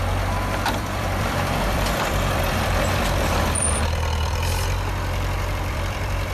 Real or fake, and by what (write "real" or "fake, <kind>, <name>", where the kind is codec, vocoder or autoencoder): fake, vocoder, BigVGAN v2